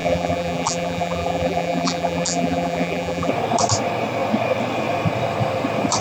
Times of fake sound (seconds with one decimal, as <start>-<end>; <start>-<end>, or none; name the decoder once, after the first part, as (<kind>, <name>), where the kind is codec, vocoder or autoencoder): 0.0-3.3 (vocoder, BigVGAN v2)